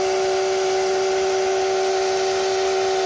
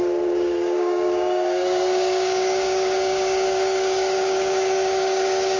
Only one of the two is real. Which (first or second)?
first